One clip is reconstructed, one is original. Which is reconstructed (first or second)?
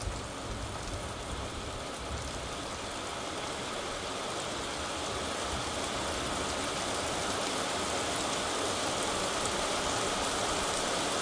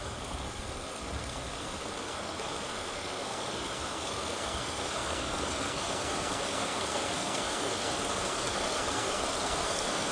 second